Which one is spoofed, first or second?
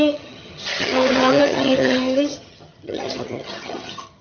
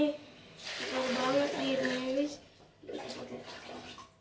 first